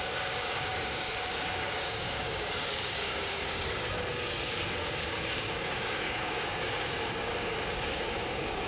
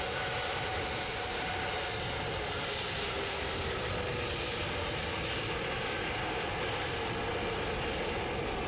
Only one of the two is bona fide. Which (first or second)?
second